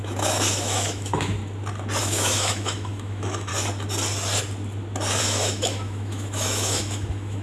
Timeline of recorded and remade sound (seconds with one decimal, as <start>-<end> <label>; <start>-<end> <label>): 0.0-1.4 remade; 1.4-2.0 recorded; 2.0-3.5 remade; 3.5-5.2 recorded; 5.2-7.4 remade